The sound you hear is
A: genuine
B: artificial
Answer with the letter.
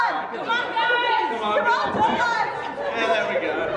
A